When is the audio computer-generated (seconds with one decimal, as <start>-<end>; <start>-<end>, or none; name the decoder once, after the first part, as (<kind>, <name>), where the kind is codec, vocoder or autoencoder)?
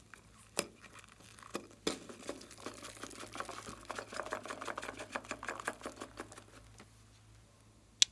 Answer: none